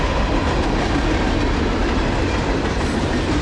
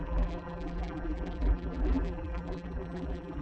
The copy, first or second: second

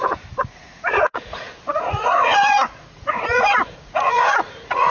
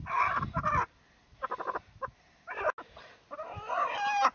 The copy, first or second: first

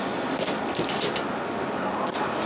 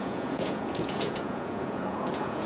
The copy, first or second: second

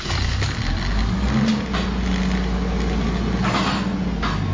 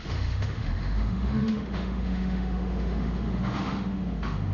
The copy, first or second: second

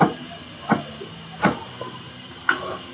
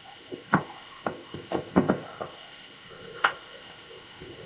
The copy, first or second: second